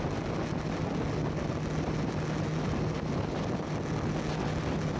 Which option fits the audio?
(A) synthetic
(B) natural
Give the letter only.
B